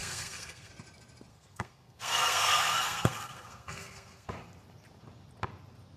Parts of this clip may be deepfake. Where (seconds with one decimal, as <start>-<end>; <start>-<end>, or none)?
0.0-0.7; 1.3-4.3